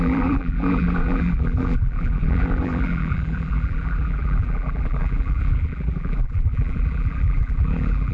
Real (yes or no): no